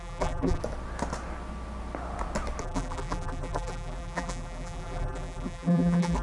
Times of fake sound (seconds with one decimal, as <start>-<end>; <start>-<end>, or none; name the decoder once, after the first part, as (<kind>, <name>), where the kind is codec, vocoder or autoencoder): 0.0-0.6 (vocoder, BigVGAN v2); 2.6-6.2

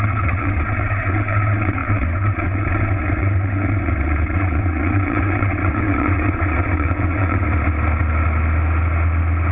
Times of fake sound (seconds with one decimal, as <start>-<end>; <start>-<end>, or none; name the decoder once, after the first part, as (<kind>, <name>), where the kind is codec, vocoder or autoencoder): 0.0-7.4 (vocoder, WaveNeXt)

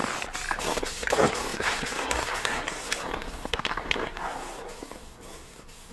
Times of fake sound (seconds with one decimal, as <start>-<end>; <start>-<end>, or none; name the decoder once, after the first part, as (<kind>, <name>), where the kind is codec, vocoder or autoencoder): 0.6-5.9 (codec, SNAC)

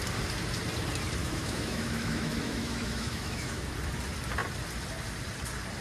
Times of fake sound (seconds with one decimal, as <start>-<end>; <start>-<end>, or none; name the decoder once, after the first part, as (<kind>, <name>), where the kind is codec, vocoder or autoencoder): 1.2-3.6 (autoencoder, DAC-VAE)

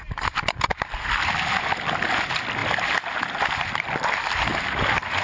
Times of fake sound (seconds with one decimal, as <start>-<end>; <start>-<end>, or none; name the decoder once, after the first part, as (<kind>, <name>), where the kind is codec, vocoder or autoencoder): none

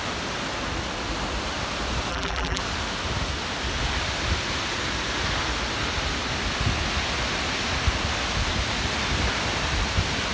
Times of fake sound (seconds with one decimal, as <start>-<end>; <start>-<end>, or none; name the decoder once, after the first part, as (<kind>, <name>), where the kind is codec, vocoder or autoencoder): 2.1-2.6 (vocoder, BigVGAN v2)